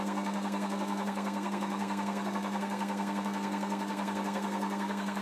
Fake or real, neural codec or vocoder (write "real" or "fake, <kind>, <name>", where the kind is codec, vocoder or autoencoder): fake, codec, SNAC